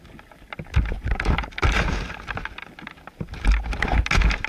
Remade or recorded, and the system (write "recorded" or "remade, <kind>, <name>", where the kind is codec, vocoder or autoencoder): recorded